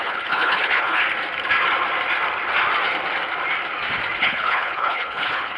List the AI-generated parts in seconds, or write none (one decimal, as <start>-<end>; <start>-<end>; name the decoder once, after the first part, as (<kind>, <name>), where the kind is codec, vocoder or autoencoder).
0.0-1.0 (codec, HILCodec); 4.2-5.6

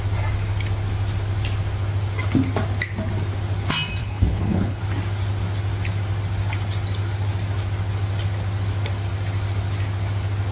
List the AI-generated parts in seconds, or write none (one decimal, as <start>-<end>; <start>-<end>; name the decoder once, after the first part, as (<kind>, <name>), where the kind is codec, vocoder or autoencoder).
4.0-4.8 (codec, HILCodec)

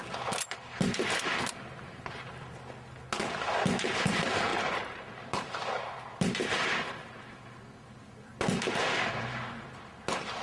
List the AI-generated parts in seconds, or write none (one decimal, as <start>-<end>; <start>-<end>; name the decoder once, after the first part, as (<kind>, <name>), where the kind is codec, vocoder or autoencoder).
none

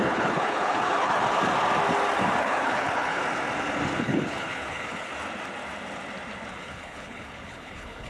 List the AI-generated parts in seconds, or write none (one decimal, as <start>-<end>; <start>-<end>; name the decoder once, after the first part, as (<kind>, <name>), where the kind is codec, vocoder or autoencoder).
0.0-1.2 (codec, HILCodec); 2.4-3.2; 4.0-5.1; 6.5-8.1

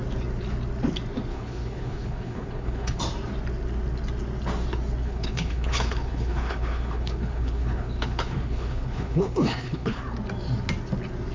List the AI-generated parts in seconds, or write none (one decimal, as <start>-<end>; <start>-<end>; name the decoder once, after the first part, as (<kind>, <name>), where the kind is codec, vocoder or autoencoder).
1.3-3.0 (codec, HILCodec); 5.0-10.0

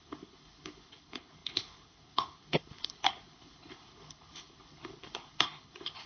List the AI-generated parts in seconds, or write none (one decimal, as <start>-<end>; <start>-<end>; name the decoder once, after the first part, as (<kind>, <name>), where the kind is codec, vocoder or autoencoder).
0.0-6.1 (codec, HILCodec)